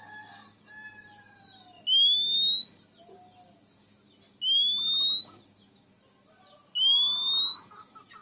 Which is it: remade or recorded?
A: recorded